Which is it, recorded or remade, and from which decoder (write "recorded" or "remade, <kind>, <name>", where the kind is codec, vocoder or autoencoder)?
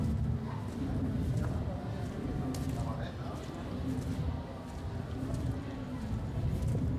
recorded